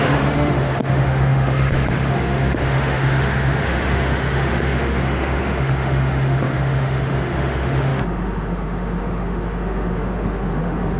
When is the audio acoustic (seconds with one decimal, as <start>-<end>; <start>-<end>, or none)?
none